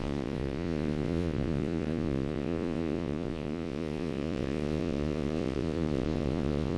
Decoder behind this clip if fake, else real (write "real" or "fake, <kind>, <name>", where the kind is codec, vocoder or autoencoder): fake, vocoder, Vocos